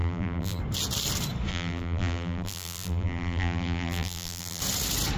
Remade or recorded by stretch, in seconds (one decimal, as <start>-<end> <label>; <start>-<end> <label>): 0.0-0.6 remade; 0.6-1.5 recorded; 1.5-4.6 remade; 4.6-5.2 recorded